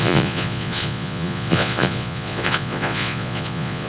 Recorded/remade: remade